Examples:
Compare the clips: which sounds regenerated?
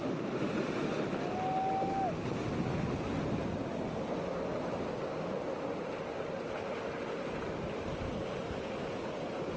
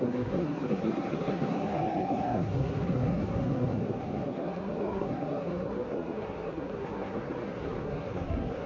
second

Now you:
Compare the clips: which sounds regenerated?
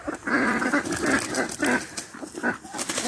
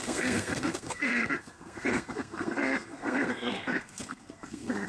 second